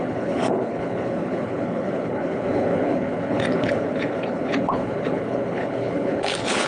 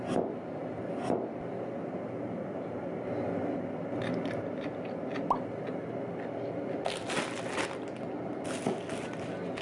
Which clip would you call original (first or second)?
second